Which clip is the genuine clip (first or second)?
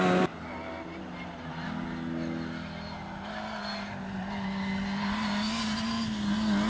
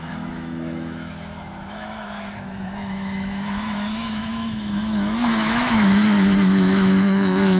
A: first